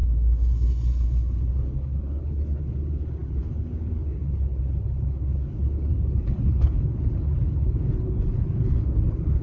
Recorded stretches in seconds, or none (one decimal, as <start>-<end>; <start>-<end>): none